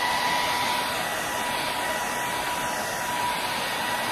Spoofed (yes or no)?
no